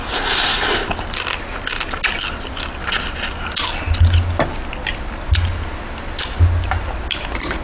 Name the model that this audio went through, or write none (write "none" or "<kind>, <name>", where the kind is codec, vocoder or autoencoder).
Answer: none